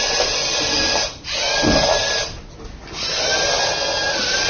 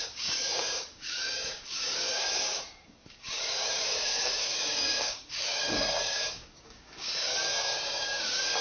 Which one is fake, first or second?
second